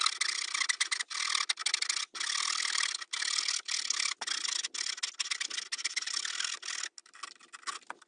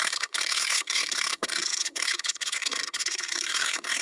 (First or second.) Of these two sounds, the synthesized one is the second